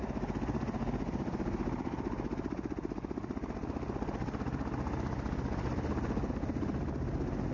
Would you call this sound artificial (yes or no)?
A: no